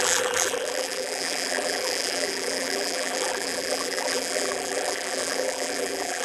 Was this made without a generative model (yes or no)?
no